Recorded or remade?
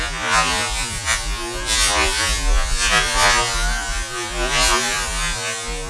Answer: recorded